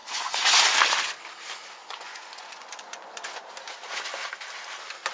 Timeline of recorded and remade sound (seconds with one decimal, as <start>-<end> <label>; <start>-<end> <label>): 0.0-0.5 remade; 0.5-1.8 recorded; 1.8-3.4 remade; 3.4-5.1 recorded